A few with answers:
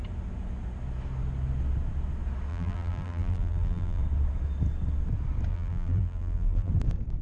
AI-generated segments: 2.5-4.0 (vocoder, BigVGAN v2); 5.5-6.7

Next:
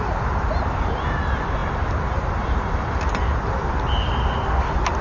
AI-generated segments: none

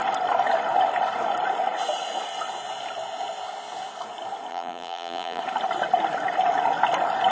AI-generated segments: 4.5-5.4 (vocoder, BigVGAN v2)

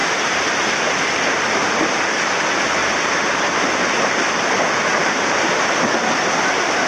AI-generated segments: 0.0-0.8 (vocoder, BigVGAN v2); 2.8-3.8; 4.9-5.6

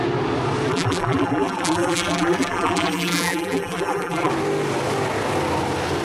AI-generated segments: 0.7-4.3 (vocoder, BigVGAN v2)